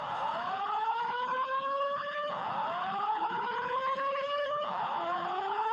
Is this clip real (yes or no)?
no